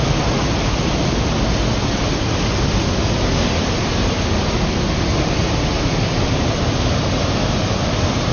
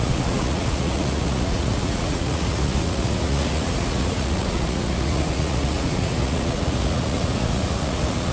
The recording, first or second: first